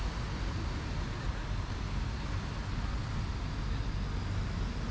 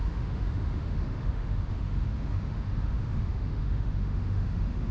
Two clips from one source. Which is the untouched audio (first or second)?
first